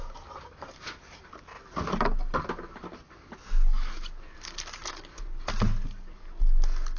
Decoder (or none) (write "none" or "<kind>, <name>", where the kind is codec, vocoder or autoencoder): none